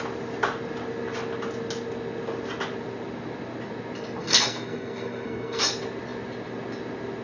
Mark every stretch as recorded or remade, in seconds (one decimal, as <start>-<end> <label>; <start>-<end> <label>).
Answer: 0.0-4.2 recorded; 4.2-5.6 remade; 5.6-7.2 recorded

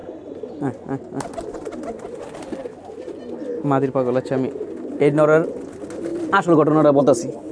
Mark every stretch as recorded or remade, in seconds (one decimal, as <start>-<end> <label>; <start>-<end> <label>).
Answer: 0.0-7.5 recorded

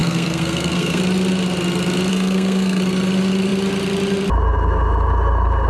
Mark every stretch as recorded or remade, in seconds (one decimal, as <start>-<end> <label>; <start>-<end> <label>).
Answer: 0.0-1.0 remade; 1.0-2.1 recorded; 2.1-2.8 remade; 2.8-5.7 recorded

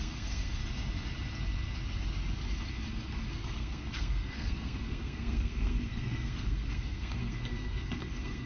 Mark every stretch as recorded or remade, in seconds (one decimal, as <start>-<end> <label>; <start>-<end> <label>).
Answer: 0.0-0.6 remade; 0.6-3.3 recorded; 3.3-8.5 remade

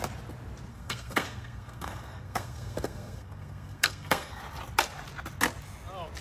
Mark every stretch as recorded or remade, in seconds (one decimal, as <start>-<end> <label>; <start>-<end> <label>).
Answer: 0.0-0.7 recorded; 0.7-4.4 remade; 4.4-6.2 recorded